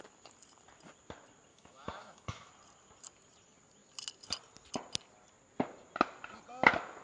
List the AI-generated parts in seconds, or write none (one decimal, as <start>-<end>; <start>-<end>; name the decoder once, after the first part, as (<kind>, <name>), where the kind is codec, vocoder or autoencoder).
1.5-2.5 (autoencoder, DAC-VAE)